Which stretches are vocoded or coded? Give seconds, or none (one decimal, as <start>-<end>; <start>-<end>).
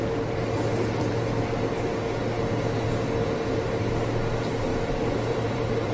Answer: 0.7-1.2; 4.7-5.9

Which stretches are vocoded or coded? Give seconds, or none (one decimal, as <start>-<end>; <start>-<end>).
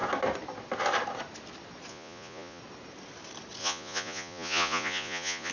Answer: 1.9-2.6; 3.6-5.5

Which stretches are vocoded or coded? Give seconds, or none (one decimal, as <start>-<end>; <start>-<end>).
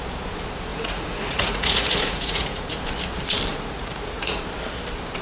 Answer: 0.7-2.8; 3.5-4.4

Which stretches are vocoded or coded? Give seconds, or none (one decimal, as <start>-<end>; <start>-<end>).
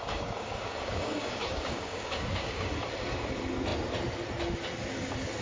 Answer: 0.0-2.7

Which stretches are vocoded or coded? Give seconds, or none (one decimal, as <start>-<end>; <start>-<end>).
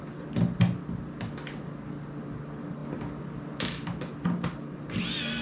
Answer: none